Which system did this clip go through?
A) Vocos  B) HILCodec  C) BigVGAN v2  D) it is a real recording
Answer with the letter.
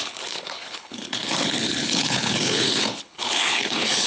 B